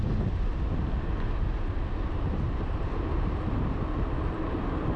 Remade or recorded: recorded